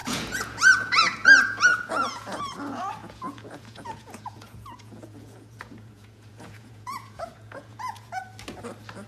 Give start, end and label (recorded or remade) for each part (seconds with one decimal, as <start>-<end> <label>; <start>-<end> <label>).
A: 0.0-2.4 remade; 2.4-3.0 recorded; 3.0-8.1 remade; 8.1-9.1 recorded